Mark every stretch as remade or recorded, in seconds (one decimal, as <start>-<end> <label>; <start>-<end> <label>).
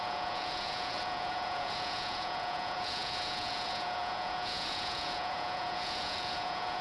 0.0-6.8 remade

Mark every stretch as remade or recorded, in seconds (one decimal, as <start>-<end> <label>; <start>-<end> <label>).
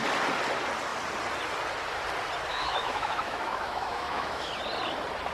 0.0-2.5 recorded; 2.5-4.5 remade; 4.5-5.3 recorded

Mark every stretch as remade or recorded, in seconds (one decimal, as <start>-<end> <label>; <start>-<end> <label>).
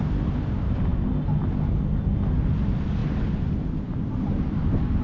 0.0-5.0 recorded